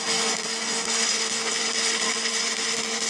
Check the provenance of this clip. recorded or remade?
recorded